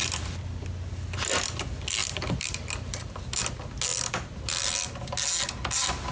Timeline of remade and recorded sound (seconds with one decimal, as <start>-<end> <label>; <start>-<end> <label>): 0.0-0.7 remade; 0.7-2.0 recorded; 2.0-3.2 remade; 3.2-6.1 recorded